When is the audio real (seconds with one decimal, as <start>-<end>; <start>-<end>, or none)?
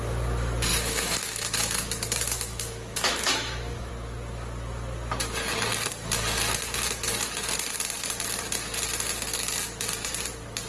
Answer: 0.0-0.7; 3.9-10.7